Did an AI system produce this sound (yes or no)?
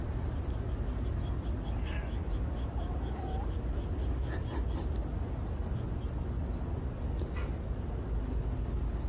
no